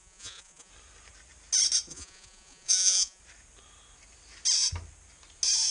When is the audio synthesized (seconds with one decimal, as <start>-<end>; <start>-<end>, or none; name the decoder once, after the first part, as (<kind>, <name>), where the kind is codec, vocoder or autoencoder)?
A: 0.0-0.7 (vocoder, Vocos); 1.9-3.2